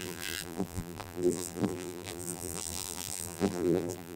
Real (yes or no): no